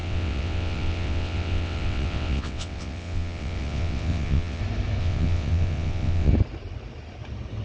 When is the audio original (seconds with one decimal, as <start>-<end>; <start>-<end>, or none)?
4.6-5.0; 6.3-7.6